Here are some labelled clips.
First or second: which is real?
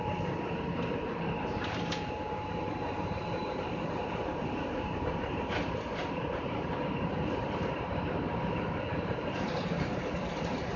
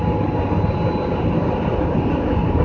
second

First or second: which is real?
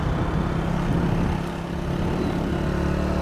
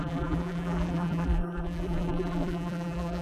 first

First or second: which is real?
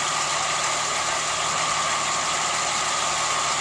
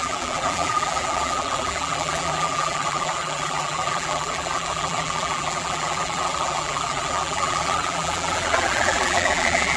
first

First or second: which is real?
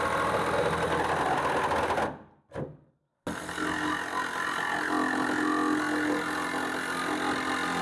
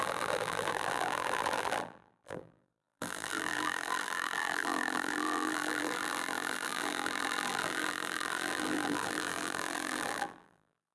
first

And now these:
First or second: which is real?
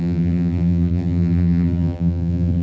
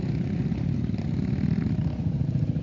second